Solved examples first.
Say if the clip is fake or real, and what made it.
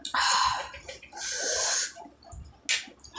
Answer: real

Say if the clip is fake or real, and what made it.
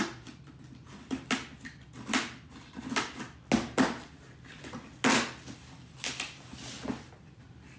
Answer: real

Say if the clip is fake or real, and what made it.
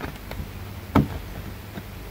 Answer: real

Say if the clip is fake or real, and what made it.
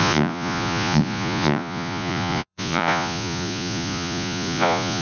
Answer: fake, vocoder, Vocos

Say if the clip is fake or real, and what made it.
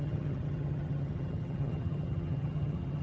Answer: fake, vocoder, HiFi-GAN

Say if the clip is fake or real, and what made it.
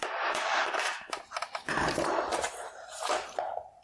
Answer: fake, vocoder, BigVGAN v2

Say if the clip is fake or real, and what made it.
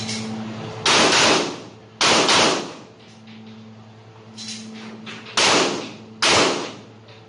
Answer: real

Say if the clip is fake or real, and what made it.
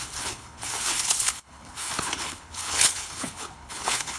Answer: fake, codec, HILCodec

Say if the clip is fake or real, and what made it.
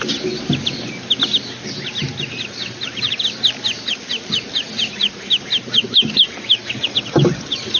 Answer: real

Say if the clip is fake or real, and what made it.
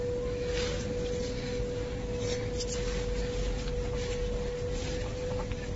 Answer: real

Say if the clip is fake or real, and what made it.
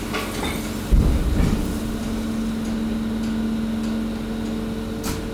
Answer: real